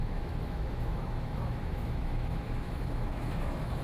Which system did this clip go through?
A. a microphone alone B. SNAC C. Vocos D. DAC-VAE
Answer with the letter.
D